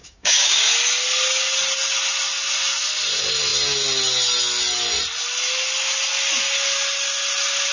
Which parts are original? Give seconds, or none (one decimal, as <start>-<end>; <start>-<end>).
0.7-7.7